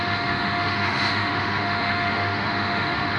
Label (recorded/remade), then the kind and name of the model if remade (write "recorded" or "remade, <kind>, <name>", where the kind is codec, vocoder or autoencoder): remade, autoencoder, DAC-VAE